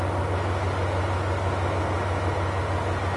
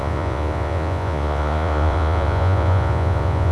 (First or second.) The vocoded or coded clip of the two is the second